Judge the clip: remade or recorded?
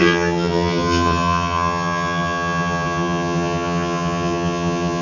remade